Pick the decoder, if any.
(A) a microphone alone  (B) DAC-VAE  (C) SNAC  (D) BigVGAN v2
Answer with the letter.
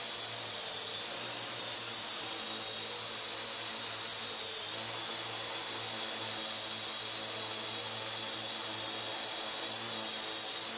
A